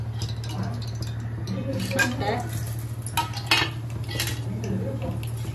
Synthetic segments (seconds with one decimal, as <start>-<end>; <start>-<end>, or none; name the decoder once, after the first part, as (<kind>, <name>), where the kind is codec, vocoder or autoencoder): none